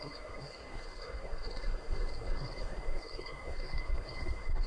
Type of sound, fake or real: fake